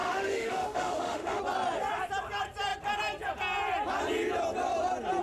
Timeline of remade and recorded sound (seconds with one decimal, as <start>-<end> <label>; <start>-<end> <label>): 0.0-1.4 remade; 1.4-5.2 recorded